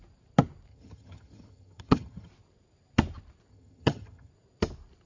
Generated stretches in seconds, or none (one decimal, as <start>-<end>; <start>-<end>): 0.7-2.3; 3.5-4.3